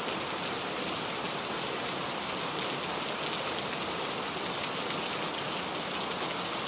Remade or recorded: recorded